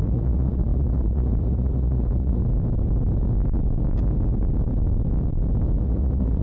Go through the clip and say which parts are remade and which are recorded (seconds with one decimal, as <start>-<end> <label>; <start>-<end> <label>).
0.0-2.4 remade; 2.4-5.8 recorded; 5.8-6.4 remade